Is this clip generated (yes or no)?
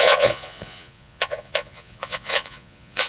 yes